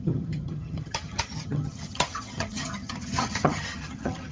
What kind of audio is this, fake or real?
fake